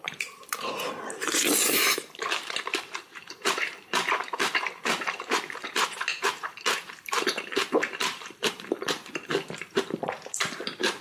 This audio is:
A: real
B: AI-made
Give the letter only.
B